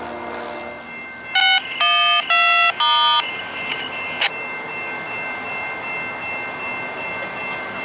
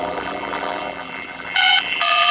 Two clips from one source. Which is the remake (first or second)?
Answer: second